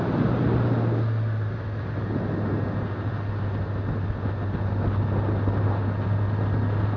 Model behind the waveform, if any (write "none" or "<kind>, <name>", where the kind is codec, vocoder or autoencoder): none